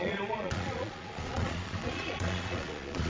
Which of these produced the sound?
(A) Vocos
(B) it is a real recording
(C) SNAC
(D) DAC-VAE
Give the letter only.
A